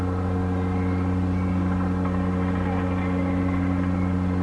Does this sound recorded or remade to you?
recorded